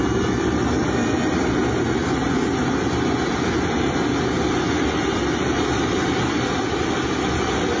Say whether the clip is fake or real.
real